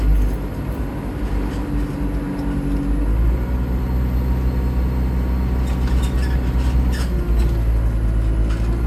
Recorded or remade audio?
recorded